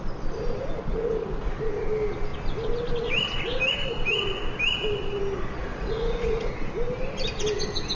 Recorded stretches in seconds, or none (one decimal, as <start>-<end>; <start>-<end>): 0.0-0.9; 1.6-5.6; 6.5-8.0